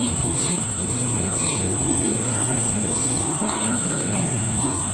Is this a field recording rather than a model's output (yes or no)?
no